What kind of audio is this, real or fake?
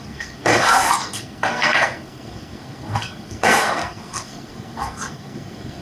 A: fake